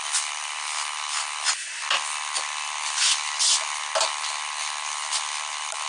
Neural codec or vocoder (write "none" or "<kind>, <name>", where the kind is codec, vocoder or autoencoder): none